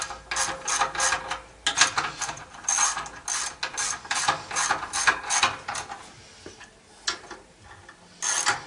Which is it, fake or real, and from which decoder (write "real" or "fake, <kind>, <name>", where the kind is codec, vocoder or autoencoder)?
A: real